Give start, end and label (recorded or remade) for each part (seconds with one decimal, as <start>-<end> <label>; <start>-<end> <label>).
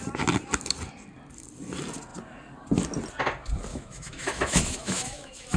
0.0-3.7 recorded; 3.7-5.6 remade